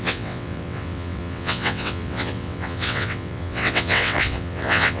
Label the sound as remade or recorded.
remade